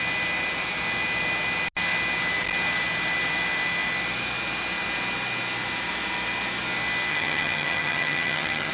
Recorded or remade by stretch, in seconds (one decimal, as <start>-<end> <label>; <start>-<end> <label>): 0.0-7.1 recorded; 7.1-8.7 remade